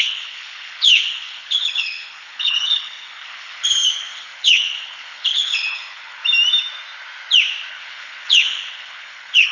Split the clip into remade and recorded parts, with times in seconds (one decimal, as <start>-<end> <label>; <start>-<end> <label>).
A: 0.0-6.2 remade; 6.2-7.7 recorded; 7.7-9.5 remade